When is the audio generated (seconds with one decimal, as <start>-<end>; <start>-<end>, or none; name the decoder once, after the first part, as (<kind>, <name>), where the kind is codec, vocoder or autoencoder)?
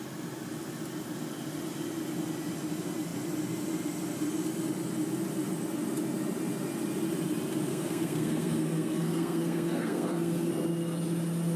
7.7-10.5 (codec, SNAC)